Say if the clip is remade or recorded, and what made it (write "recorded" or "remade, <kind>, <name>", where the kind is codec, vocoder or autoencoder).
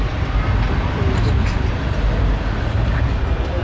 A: recorded